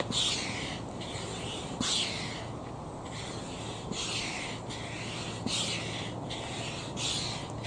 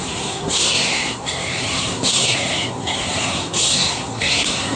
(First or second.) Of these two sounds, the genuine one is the first